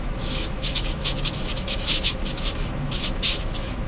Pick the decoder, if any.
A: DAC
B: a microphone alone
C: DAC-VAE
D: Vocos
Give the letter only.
C